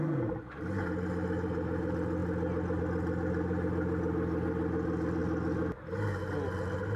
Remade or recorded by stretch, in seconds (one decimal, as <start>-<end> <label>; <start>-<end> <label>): 0.0-7.0 recorded